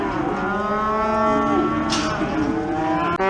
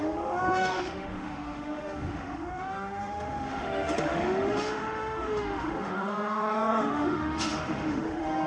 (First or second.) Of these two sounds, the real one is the first